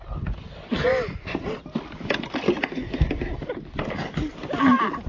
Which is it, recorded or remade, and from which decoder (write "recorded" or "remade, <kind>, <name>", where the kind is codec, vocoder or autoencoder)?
recorded